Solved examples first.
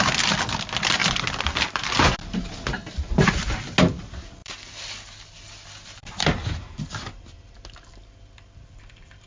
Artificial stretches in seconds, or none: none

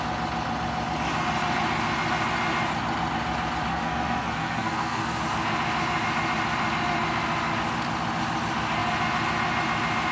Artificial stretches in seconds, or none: 3.7-5.2 (codec, SNAC)